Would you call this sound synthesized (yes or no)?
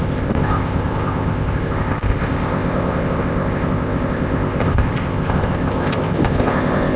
yes